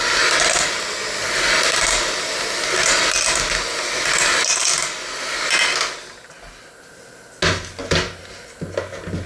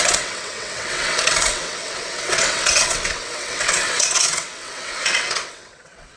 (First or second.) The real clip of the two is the first